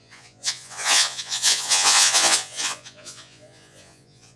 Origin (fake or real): fake